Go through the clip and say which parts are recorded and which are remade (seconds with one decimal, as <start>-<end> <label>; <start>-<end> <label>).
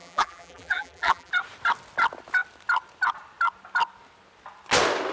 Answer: 0.0-1.3 remade; 1.3-5.1 recorded